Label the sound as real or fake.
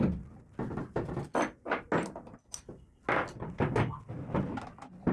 real